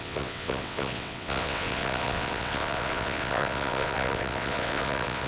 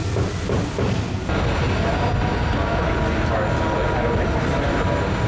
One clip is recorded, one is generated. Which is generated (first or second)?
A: first